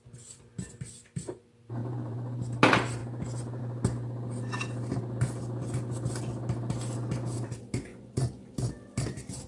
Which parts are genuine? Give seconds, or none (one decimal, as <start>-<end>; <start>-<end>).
0.0-1.8; 2.4-7.9; 8.7-9.5